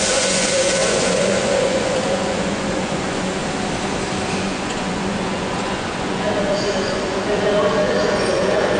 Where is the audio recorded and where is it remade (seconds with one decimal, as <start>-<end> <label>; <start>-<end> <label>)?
0.0-3.4 remade; 3.4-4.4 recorded; 4.4-8.8 remade

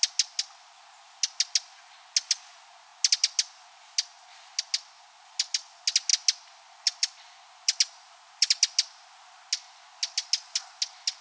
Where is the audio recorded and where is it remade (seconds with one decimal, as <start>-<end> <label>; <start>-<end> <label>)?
0.0-11.2 recorded

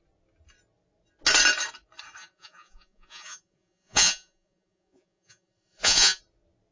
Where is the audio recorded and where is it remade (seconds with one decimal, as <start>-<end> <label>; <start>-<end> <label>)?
0.0-2.2 recorded; 2.2-6.2 remade; 6.2-6.7 recorded

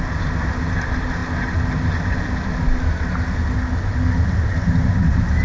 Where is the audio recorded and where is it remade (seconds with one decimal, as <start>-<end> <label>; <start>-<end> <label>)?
0.0-5.4 recorded